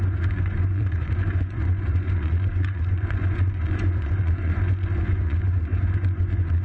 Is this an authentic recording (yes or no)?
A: no